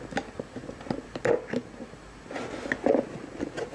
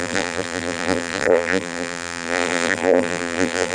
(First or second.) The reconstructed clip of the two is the second